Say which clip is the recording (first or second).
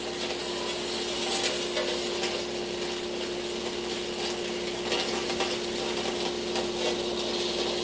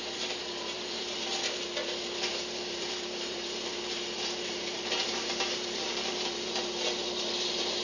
first